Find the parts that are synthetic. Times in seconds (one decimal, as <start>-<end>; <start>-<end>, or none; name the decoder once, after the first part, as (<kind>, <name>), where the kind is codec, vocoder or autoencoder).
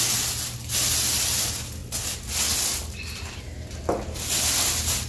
none